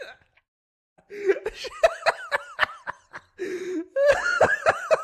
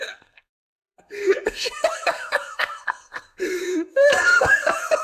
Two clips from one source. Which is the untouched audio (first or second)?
first